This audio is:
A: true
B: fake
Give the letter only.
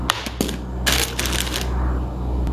A